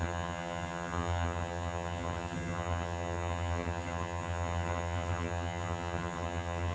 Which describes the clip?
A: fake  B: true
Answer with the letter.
A